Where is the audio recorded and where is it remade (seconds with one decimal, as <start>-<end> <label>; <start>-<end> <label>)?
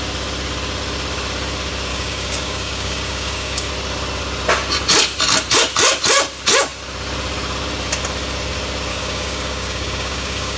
0.0-1.9 recorded; 1.9-3.7 remade; 3.7-8.9 recorded; 8.9-10.6 remade